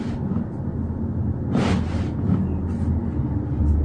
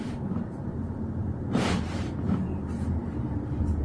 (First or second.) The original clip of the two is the first